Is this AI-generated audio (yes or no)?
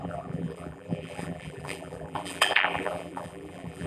yes